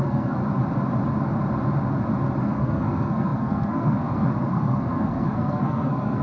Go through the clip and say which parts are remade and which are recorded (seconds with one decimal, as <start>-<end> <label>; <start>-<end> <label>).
0.0-0.4 remade; 0.4-2.4 recorded; 2.4-6.2 remade